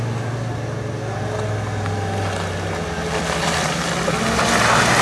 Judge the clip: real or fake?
real